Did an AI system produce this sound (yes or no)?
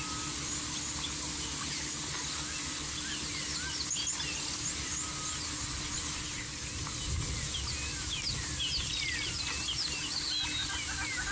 no